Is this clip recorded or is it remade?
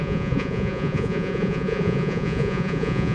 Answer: remade